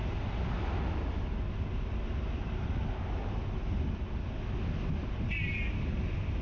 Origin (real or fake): real